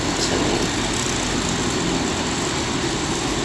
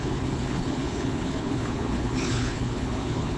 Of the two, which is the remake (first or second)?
second